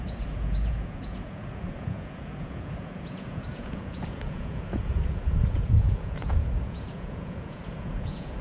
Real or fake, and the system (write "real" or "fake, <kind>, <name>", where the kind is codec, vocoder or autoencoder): fake, vocoder, Vocos